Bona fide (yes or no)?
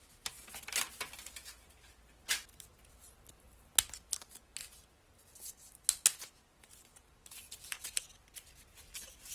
yes